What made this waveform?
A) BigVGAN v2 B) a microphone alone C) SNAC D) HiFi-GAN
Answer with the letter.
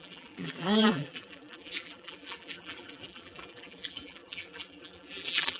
A